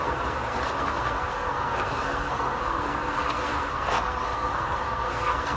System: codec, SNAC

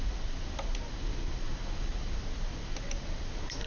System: none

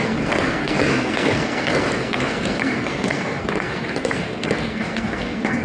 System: codec, SNAC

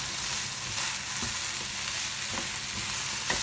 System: none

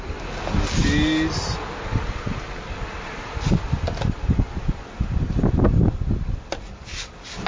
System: none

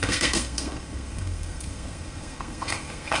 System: codec, SNAC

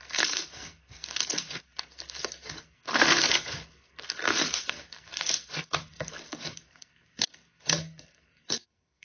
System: codec, SNAC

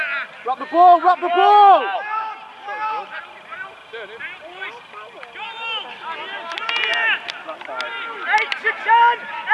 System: none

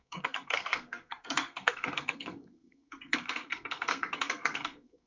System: codec, SNAC